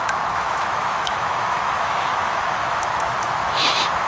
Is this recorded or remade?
remade